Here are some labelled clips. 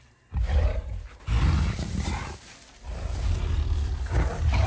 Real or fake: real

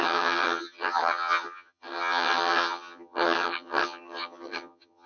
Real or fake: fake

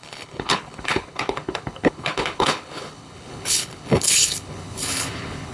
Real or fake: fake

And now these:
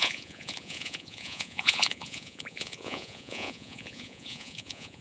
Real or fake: fake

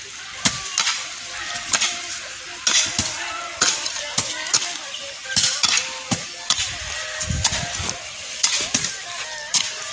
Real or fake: real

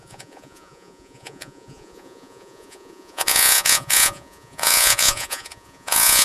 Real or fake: fake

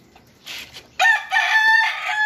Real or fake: real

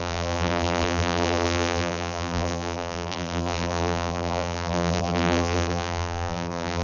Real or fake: fake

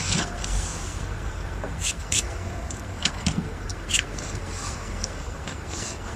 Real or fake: fake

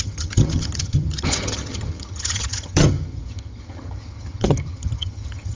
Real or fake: fake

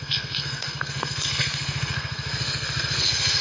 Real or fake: fake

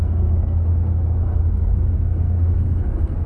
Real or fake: fake